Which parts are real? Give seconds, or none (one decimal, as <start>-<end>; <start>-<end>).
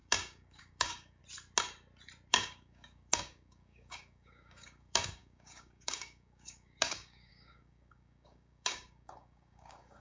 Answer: 1.2-2.3